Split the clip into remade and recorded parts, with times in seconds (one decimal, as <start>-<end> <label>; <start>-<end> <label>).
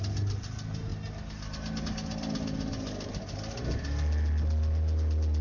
0.0-5.4 recorded